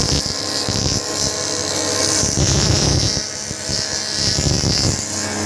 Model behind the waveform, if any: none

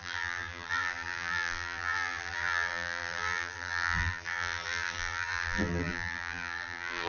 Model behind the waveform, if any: vocoder, BigVGAN v2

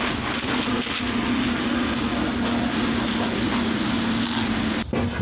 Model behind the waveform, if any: none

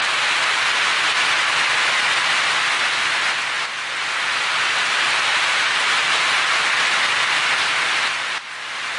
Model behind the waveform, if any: none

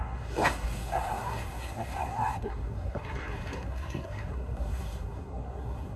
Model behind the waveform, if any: codec, SNAC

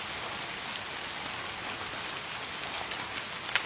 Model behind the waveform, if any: none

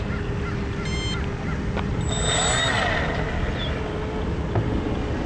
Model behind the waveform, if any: none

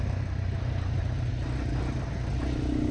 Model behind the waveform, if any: none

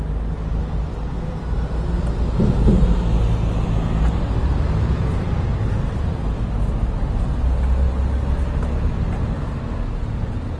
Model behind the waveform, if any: none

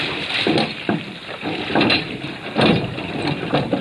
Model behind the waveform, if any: none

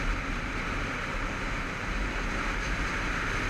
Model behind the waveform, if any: vocoder, BigVGAN v2